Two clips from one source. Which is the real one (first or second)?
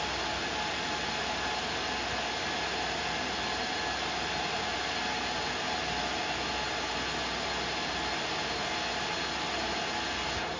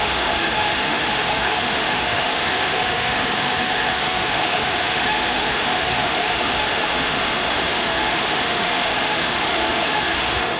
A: first